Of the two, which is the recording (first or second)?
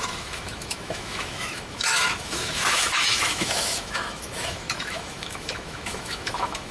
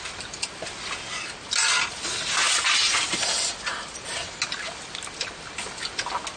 second